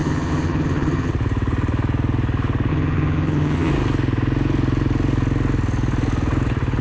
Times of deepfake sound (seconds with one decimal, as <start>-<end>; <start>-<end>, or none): 0.0-1.1; 2.7-3.7